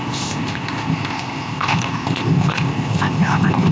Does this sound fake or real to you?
fake